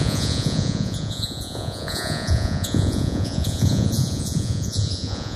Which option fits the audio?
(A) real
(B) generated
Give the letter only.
B